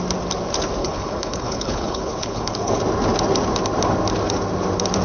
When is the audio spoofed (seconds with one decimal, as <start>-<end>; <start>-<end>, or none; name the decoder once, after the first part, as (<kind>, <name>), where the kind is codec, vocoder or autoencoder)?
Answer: 0.8-2.8 (codec, HILCodec)